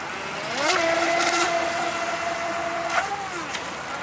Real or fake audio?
real